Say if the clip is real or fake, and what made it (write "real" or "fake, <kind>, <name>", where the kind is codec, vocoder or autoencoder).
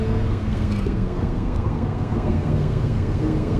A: fake, codec, SNAC